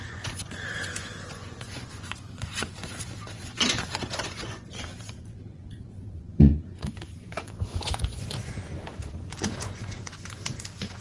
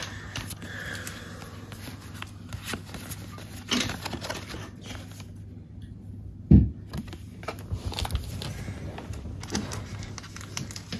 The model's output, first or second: first